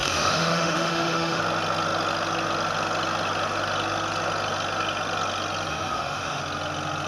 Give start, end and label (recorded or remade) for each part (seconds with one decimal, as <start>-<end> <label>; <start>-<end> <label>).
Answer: 0.0-1.4 remade; 1.4-5.7 recorded; 5.7-6.4 remade; 6.4-7.1 recorded